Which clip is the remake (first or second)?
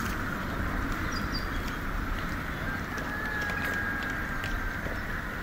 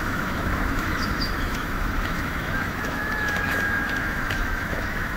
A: second